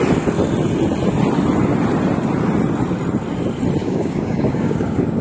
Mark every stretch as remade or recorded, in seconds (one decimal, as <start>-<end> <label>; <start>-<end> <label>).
0.0-3.8 recorded; 3.8-5.2 remade